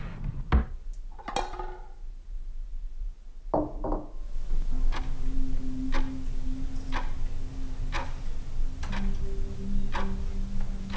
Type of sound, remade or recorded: recorded